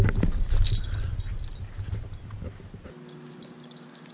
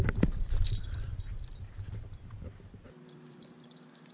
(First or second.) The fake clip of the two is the second